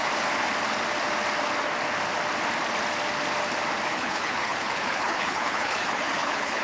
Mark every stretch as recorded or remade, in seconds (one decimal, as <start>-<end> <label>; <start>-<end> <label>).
0.0-3.9 recorded; 3.9-6.6 remade